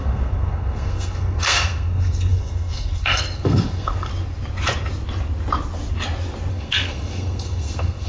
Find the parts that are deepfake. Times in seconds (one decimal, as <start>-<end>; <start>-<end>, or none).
0.0-4.1; 6.5-8.1